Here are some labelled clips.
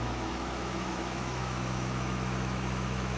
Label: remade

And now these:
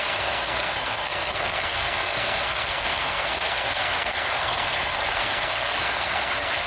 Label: remade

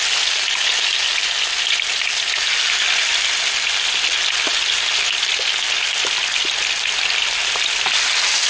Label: recorded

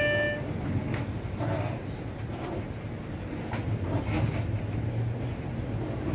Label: recorded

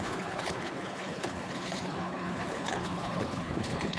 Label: remade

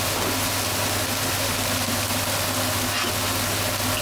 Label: recorded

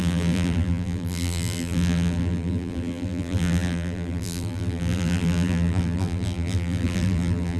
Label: remade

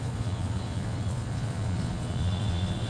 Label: remade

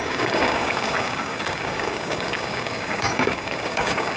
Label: remade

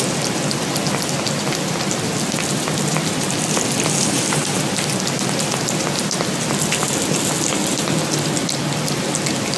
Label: recorded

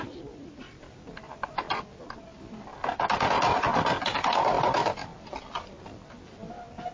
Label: recorded